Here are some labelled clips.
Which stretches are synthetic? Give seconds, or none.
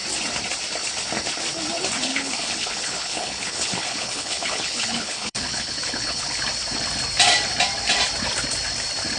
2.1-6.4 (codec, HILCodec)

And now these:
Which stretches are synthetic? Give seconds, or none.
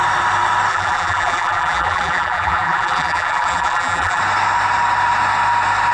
0.7-4.2 (vocoder, BigVGAN v2)